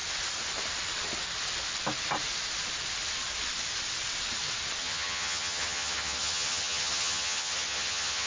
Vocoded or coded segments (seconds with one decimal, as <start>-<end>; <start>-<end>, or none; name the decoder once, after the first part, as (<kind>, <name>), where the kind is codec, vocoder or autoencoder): 4.8-8.3 (vocoder, HiFi-GAN)

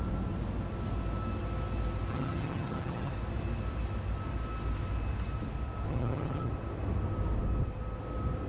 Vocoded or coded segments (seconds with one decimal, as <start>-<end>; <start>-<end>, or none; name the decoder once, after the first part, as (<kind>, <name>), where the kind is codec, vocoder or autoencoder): 2.1-3.1 (vocoder, HiFi-GAN); 5.9-6.5

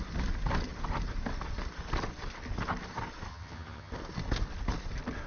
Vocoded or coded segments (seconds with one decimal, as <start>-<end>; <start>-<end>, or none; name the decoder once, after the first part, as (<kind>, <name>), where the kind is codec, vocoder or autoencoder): 3.3-3.9 (vocoder, HiFi-GAN)

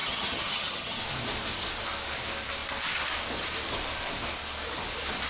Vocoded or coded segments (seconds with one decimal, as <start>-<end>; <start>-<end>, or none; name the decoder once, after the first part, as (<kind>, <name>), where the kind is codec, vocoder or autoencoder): 0.0-1.0 (vocoder, HiFi-GAN)

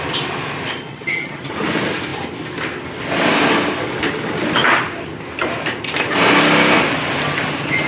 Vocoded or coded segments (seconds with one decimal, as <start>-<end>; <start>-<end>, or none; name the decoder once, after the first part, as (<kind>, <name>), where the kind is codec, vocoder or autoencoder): 0.9-1.5 (vocoder, HiFi-GAN)

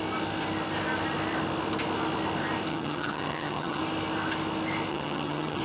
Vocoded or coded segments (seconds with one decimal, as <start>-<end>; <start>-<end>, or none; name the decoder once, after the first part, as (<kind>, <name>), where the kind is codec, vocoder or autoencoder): 2.7-3.8 (vocoder, HiFi-GAN); 4.9-5.6

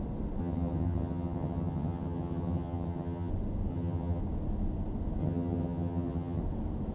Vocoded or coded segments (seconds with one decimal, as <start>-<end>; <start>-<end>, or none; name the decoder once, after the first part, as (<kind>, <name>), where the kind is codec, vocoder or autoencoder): 0.4-3.3 (vocoder, HiFi-GAN); 3.7-4.2; 5.2-6.4